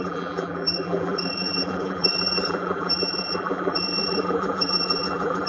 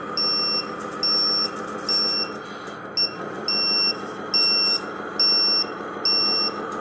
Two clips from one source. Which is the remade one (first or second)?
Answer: first